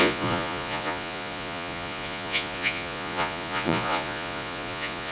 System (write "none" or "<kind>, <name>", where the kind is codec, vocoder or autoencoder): vocoder, Vocos